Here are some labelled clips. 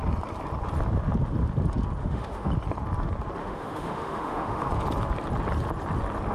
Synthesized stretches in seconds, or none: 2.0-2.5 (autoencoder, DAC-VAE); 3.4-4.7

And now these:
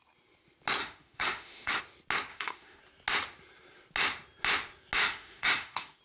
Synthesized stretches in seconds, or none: 0.8-1.8 (autoencoder, DAC-VAE); 2.3-2.8; 5.0-6.0